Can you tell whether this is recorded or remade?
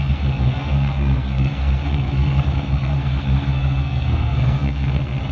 remade